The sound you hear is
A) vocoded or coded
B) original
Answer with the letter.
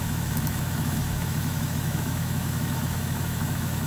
A